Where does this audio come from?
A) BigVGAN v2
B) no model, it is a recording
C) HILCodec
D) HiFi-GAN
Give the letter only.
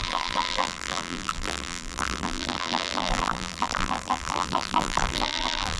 A